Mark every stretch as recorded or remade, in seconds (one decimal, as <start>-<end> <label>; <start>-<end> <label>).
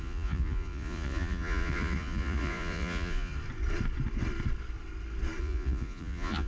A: 0.0-3.3 remade; 3.3-5.4 recorded; 5.4-6.5 remade